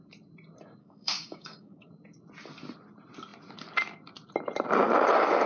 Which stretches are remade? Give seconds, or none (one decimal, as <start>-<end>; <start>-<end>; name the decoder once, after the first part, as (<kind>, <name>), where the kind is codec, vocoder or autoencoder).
0.8-1.9 (codec, DAC)